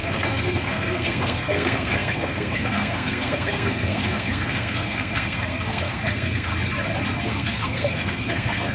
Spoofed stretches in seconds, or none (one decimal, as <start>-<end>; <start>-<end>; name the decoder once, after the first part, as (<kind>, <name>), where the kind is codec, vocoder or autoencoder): 0.0-6.5 (codec, SNAC); 7.2-8.7